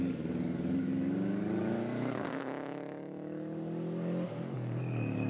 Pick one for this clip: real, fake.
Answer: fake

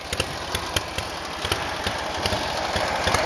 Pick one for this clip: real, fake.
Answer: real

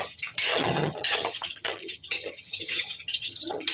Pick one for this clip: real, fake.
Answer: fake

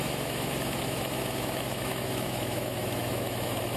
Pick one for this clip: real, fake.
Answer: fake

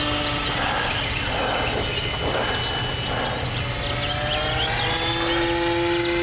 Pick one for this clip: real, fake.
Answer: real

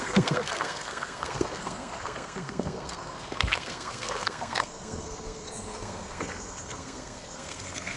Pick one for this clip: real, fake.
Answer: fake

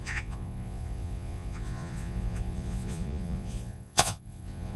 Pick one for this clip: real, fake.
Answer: fake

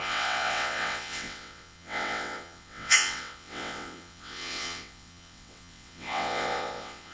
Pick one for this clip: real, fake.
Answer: fake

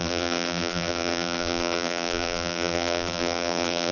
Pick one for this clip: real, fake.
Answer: fake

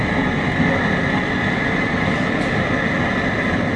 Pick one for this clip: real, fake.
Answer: real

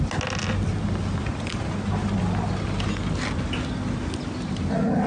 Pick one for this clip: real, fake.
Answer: real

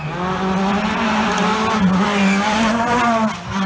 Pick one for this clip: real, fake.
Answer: real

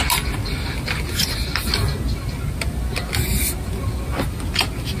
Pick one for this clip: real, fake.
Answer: real